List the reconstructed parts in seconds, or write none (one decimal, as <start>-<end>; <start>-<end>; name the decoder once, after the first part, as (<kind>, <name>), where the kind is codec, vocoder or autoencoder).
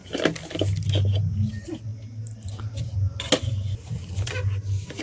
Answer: none